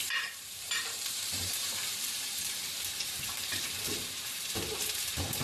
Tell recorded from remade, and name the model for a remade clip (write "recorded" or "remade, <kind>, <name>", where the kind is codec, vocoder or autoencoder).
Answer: remade, vocoder, BigVGAN v2